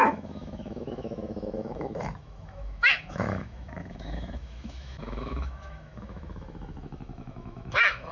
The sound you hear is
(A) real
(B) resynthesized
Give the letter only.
B